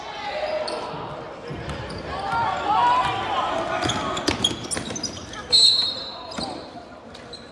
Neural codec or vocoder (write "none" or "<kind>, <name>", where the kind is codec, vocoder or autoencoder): none